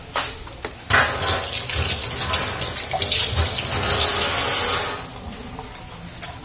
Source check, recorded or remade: recorded